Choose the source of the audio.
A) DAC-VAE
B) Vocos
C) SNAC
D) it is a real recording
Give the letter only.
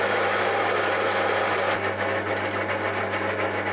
D